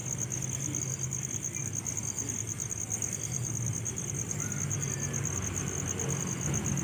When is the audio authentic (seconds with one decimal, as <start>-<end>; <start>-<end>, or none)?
0.0-6.8